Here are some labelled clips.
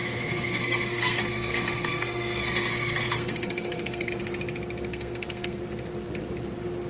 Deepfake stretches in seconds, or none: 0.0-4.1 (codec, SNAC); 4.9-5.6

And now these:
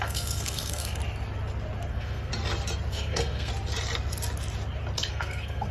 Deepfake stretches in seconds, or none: 0.0-1.0 (codec, SNAC); 1.9-2.3; 2.9-3.5; 5.1-5.7